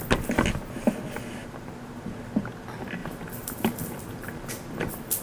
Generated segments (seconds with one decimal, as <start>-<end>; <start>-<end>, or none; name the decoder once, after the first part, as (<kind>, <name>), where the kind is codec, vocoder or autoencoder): 1.4-2.3 (vocoder, BigVGAN v2); 3.0-4.5